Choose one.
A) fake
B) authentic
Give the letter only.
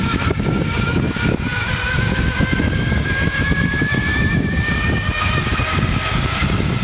A